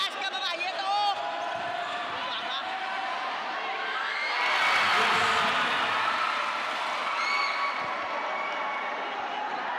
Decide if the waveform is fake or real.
real